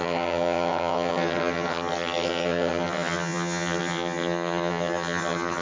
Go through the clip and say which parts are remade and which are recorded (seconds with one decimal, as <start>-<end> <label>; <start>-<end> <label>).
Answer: 0.0-5.6 remade